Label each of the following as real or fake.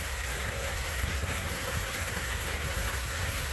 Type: fake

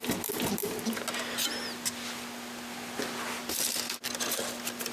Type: real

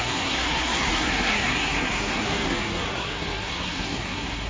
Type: fake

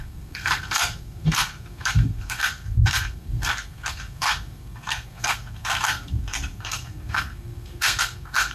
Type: fake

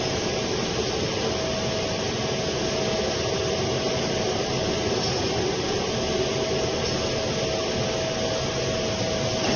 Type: real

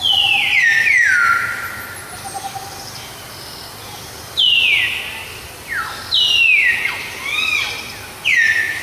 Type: real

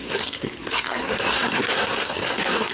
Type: fake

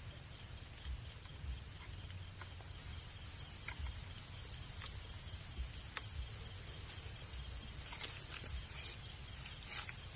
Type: real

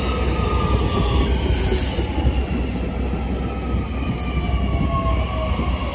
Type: real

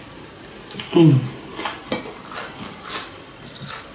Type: real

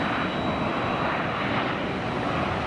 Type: real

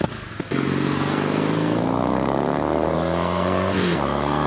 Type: fake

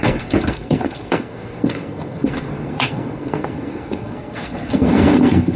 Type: fake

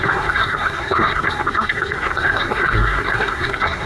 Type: fake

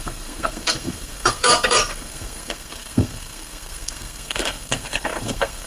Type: fake